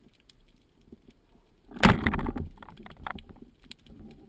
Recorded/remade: recorded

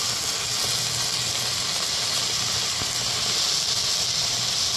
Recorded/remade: recorded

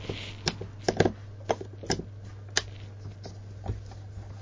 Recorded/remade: recorded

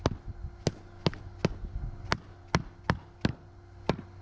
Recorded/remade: recorded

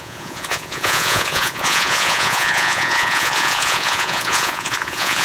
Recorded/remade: remade